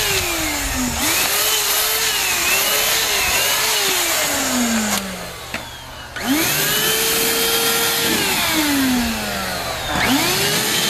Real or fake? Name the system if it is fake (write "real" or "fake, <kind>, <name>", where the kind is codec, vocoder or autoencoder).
real